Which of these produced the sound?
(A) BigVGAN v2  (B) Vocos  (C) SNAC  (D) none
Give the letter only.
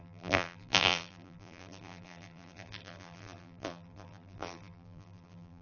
A